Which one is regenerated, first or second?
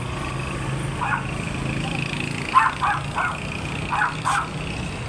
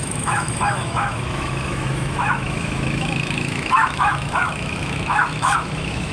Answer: second